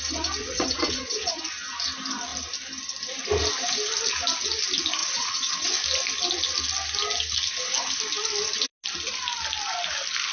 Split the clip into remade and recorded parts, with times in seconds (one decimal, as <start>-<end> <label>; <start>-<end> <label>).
0.0-0.4 recorded; 0.4-1.4 remade; 1.4-5.0 recorded; 5.0-5.7 remade; 5.7-10.3 recorded